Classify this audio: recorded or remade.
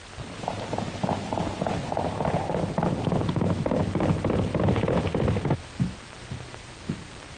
recorded